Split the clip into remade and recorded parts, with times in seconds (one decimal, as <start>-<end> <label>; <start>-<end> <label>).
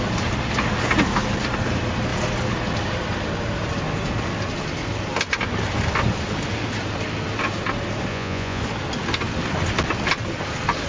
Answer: 0.0-8.1 recorded; 8.1-8.6 remade; 8.6-10.9 recorded